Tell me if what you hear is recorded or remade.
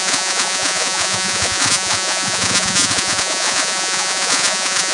remade